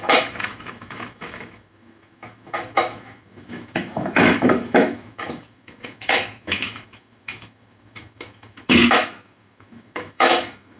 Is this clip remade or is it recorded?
remade